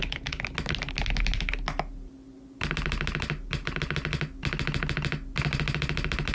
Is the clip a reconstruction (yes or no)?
no